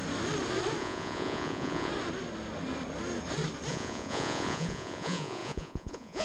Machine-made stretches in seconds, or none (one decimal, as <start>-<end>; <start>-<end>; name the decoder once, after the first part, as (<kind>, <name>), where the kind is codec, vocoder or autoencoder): 0.8-1.9 (vocoder, Vocos); 3.7-6.2